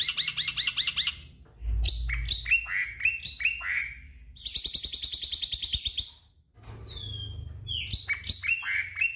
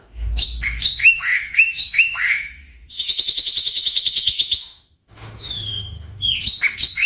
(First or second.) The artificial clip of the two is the second